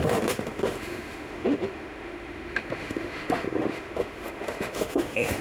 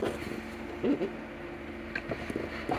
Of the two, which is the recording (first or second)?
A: second